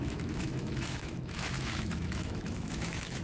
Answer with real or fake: fake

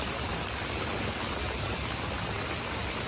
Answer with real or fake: real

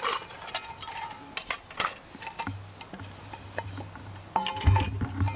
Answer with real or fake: real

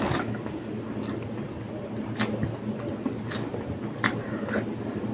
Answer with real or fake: real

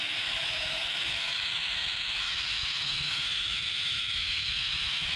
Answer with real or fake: fake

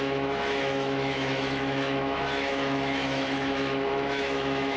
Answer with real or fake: fake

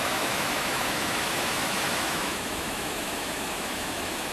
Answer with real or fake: fake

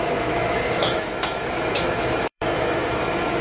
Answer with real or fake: fake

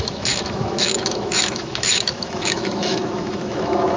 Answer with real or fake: fake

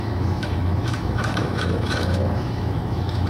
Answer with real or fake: fake